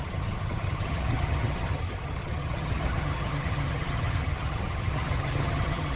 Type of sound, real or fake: fake